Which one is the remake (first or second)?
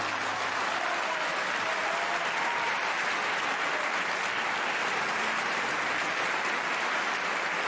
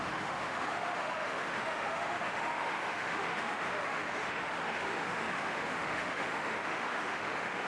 second